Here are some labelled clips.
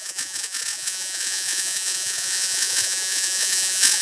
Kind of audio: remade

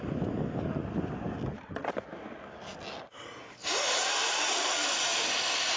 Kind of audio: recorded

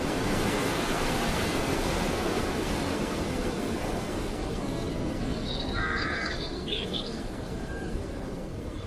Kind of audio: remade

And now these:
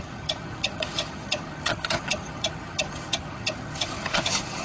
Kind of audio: remade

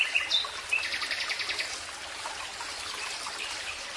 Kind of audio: recorded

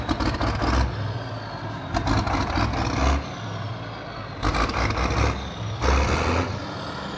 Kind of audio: recorded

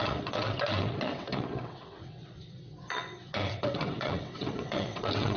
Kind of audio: remade